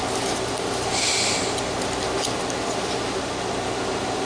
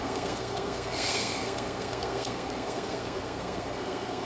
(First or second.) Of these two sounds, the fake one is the second